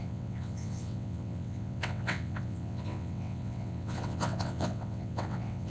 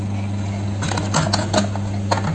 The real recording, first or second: second